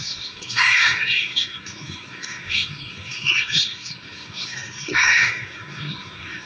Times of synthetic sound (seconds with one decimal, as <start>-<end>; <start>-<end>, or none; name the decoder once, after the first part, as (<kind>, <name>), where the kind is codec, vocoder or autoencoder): 0.0-6.5 (codec, SNAC)